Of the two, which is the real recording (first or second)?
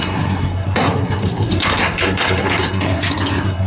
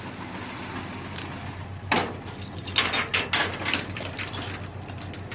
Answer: second